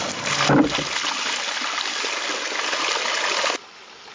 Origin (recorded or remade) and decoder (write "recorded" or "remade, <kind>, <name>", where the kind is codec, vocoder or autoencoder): recorded